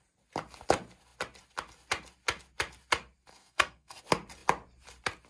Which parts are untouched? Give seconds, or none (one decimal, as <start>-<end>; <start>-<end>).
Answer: 0.0-3.3; 4.0-5.3